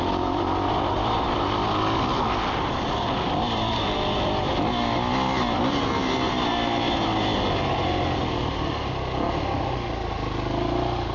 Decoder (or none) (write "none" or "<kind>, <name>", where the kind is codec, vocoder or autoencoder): none